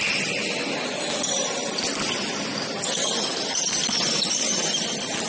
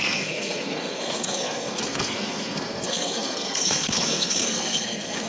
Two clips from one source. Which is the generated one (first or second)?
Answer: second